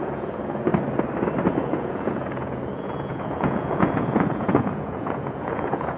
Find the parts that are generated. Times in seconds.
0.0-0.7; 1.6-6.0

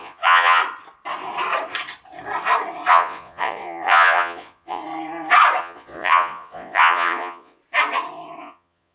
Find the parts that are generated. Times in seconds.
0.0-0.6; 2.9-4.8; 5.6-7.6; 8.4-8.9

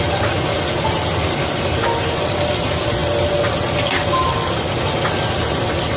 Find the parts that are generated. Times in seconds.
none

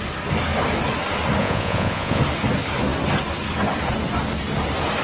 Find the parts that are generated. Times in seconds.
1.4-2.2

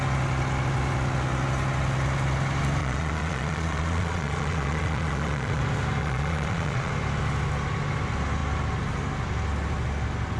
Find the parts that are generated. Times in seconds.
2.8-5.6; 6.0-6.9

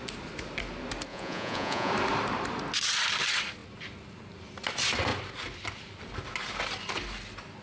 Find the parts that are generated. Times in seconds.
1.1-1.9

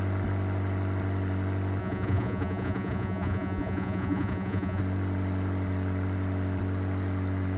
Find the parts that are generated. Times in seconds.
1.8-4.8

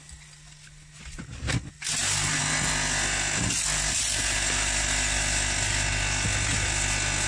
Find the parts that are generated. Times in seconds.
none